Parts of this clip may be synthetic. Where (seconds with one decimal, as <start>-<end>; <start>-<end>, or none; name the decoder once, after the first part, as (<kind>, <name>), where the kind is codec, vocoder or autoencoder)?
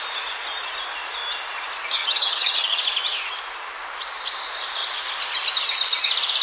2.0-2.8 (vocoder, HiFi-GAN)